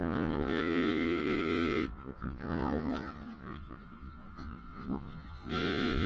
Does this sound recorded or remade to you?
remade